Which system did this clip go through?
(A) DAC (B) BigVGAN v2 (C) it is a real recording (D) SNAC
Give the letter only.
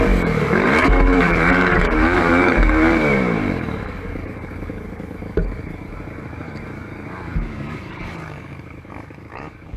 A